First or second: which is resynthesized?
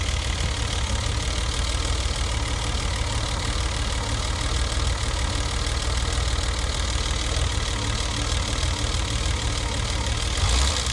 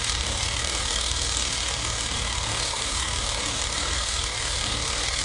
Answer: second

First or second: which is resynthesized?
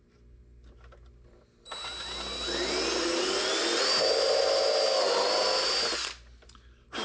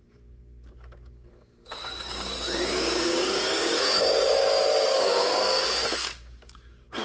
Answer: second